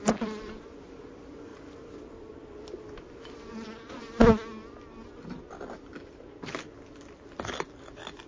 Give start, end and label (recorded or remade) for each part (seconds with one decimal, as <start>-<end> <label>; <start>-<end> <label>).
0.0-8.3 recorded